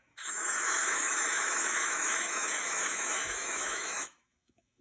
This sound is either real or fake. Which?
fake